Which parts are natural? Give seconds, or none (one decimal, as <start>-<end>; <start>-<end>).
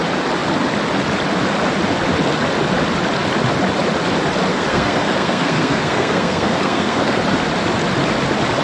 0.0-4.5; 7.2-8.6